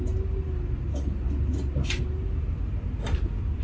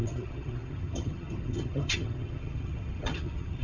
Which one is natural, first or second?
first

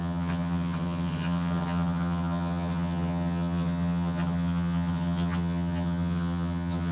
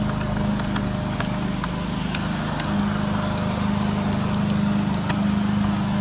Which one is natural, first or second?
second